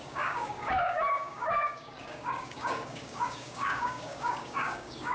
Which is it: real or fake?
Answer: fake